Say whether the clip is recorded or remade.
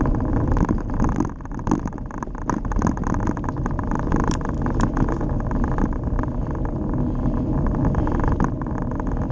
recorded